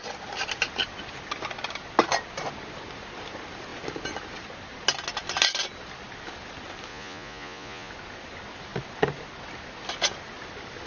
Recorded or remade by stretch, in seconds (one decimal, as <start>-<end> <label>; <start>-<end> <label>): 0.0-6.9 recorded; 6.9-7.9 remade; 7.9-10.9 recorded